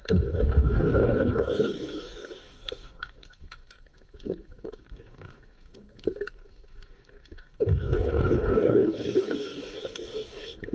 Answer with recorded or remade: remade